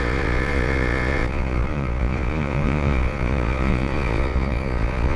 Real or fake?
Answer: fake